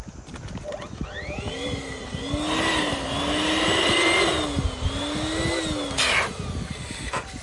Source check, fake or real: real